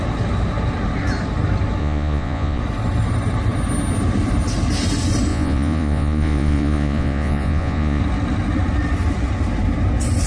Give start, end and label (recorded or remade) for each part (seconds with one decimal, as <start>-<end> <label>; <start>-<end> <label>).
0.0-1.8 recorded; 1.8-2.6 remade; 2.6-5.3 recorded; 5.3-8.0 remade; 8.0-10.3 recorded